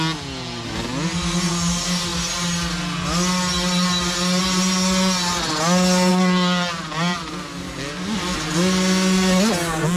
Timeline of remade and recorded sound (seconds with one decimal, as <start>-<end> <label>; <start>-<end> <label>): 0.0-6.1 recorded; 6.1-7.3 remade; 7.3-10.0 recorded